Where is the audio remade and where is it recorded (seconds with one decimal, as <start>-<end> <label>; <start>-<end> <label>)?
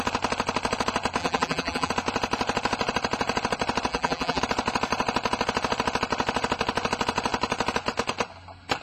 0.0-1.2 recorded; 1.2-1.9 remade; 1.9-3.9 recorded; 3.9-4.4 remade; 4.4-8.8 recorded